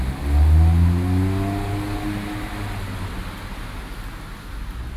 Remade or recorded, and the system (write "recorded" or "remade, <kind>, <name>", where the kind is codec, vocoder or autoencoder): recorded